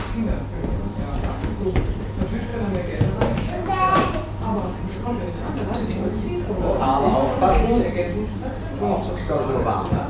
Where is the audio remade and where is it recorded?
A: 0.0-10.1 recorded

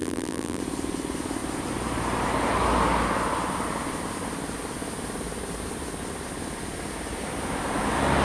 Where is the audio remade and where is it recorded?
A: 0.0-0.6 remade; 0.6-8.2 recorded